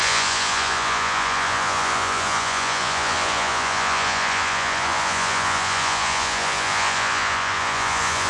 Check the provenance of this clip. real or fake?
fake